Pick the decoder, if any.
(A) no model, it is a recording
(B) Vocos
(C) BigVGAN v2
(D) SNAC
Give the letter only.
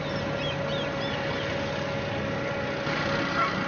A